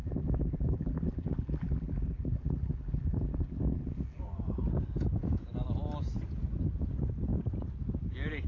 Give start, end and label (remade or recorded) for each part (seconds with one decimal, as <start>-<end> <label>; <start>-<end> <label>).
0.0-4.2 remade; 4.2-8.5 recorded